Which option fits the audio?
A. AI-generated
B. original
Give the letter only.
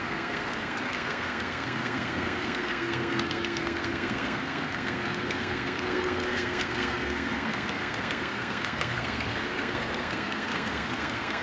A